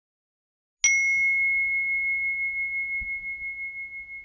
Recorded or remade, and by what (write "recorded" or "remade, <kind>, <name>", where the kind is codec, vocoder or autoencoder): recorded